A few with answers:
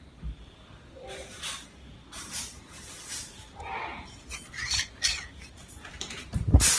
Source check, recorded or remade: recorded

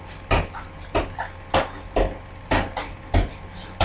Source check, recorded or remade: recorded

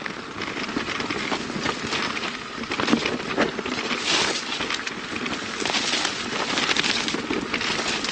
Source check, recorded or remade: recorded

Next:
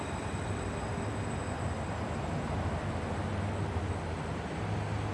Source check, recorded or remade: recorded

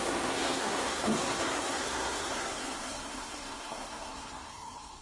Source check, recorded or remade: remade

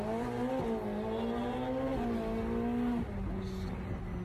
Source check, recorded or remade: recorded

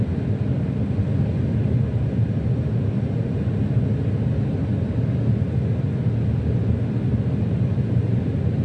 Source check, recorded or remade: recorded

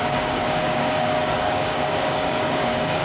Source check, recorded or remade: remade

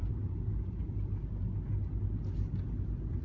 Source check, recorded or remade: recorded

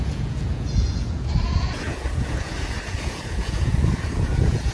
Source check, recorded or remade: remade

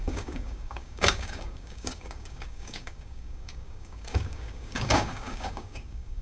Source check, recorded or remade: remade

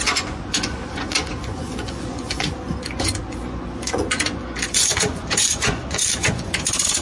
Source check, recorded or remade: remade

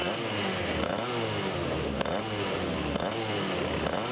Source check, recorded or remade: recorded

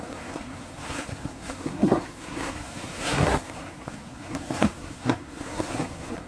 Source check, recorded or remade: remade